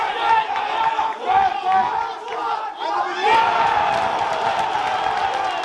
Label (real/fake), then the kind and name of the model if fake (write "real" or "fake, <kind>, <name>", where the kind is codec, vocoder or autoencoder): real